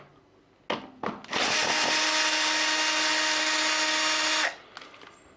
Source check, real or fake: real